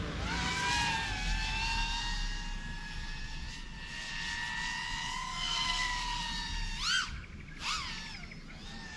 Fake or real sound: real